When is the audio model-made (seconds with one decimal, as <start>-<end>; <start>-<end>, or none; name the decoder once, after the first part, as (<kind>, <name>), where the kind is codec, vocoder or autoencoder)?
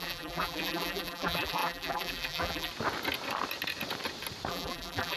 0.0-2.7 (vocoder, BigVGAN v2); 4.5-5.2